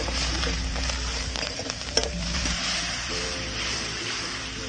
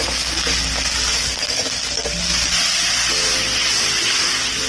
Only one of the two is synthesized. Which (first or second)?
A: first